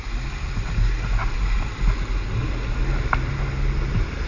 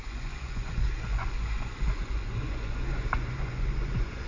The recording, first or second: first